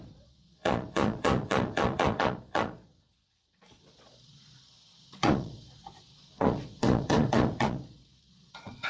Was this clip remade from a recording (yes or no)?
yes